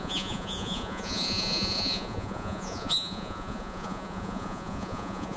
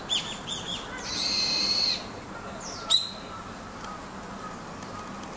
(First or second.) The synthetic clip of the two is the first